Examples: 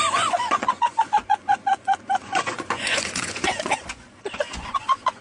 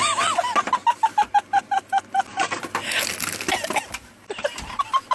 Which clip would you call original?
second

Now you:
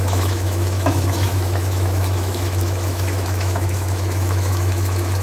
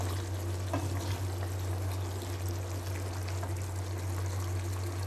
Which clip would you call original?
second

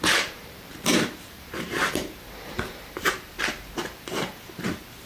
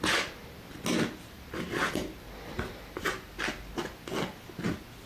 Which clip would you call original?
second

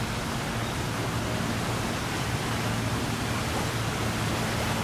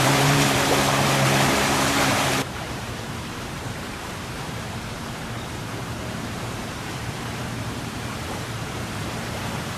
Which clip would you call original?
first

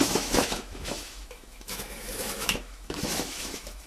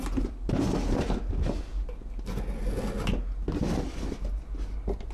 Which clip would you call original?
second